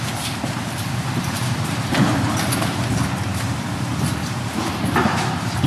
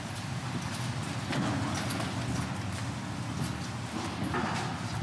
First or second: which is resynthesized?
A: first